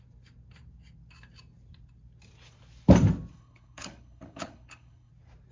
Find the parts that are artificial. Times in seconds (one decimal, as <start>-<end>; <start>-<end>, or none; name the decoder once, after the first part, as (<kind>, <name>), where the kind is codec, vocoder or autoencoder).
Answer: 3.3-5.1 (codec, HILCodec)